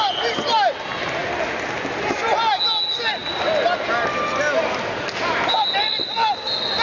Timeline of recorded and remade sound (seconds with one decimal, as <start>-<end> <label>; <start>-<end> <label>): 0.0-6.8 recorded